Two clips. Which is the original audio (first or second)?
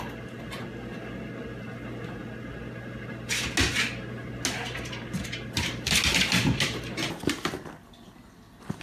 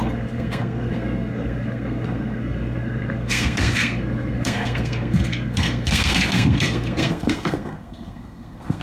first